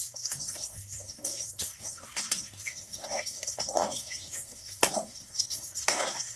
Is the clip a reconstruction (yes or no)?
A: yes